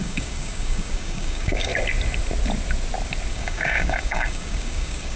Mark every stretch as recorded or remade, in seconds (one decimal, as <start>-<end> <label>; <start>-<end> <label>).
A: 0.0-1.7 remade; 1.7-3.3 recorded; 3.3-5.2 remade